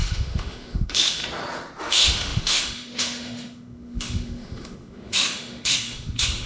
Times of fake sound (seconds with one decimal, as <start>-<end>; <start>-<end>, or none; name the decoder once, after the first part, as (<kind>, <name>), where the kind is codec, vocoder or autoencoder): 0.0-1.2 (autoencoder, DAC-VAE); 1.8-6.5